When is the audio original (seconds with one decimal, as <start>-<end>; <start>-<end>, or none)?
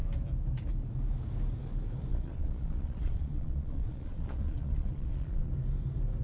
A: 0.0-2.1; 5.5-6.2